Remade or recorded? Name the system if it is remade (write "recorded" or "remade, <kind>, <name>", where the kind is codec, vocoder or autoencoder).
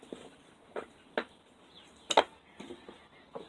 recorded